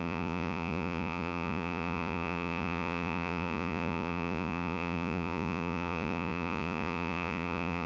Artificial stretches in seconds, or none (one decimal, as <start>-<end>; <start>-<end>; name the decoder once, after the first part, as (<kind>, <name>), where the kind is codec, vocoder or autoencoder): 0.0-7.9 (vocoder, Vocos)